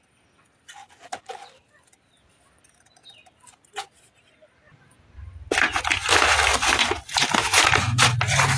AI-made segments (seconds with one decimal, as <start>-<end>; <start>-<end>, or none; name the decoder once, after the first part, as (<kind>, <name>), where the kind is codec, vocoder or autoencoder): none